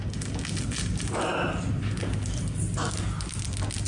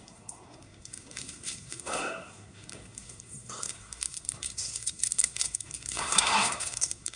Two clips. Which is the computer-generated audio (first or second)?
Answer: second